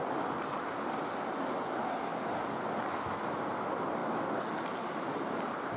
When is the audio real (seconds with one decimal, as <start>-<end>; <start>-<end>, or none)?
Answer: 0.0-2.1; 2.7-5.8